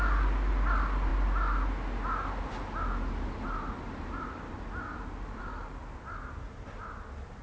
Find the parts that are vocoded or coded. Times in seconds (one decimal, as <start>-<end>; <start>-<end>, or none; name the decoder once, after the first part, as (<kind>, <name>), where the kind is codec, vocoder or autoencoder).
none